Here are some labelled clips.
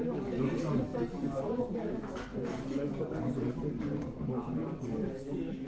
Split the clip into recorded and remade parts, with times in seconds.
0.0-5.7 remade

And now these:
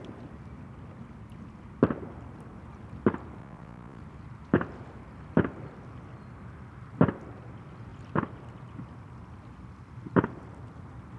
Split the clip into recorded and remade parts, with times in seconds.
0.0-3.4 recorded; 3.4-4.0 remade; 4.0-11.2 recorded

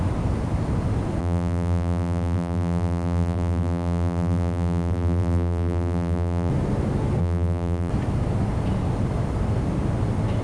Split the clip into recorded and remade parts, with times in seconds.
0.0-1.2 recorded; 1.2-6.5 remade; 6.5-7.2 recorded; 7.2-7.9 remade; 7.9-10.4 recorded